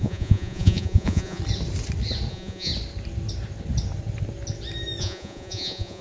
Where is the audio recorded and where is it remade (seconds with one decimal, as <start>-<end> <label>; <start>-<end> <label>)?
0.0-1.4 remade; 1.4-2.3 recorded; 2.3-2.7 remade; 2.7-5.0 recorded; 5.0-6.0 remade